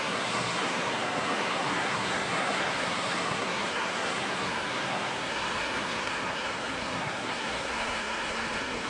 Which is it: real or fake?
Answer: fake